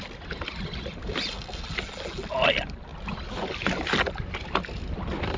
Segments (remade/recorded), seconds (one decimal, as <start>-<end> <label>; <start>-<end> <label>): 0.0-5.4 recorded